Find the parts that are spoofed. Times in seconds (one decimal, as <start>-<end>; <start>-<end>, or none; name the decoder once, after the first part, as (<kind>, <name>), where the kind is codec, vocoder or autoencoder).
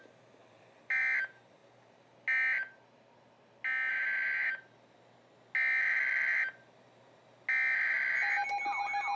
0.4-1.0 (vocoder, BigVGAN v2)